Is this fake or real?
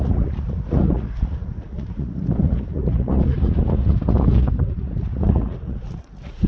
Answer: fake